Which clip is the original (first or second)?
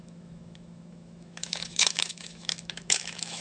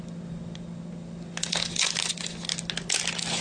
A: second